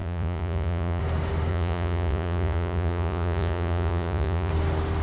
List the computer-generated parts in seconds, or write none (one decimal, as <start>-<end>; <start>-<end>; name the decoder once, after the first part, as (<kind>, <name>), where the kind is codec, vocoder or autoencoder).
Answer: 0.0-1.0 (vocoder, Vocos); 1.5-4.5